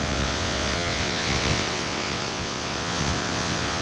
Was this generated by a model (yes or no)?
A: yes